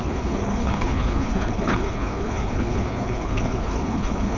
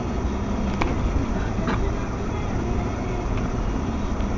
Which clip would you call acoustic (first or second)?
second